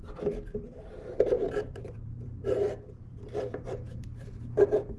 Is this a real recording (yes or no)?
no